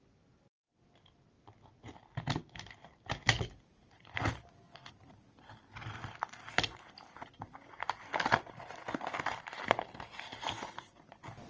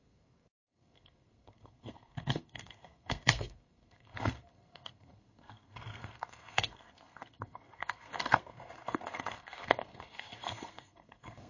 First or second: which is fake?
second